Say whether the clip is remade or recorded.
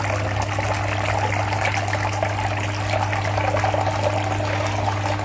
recorded